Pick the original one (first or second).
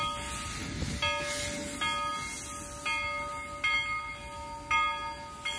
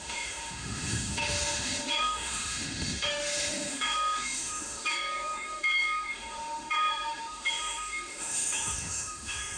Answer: first